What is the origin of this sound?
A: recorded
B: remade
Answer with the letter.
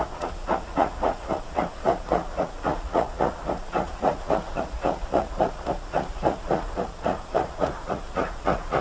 B